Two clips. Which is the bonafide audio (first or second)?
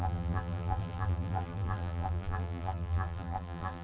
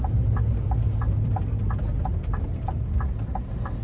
second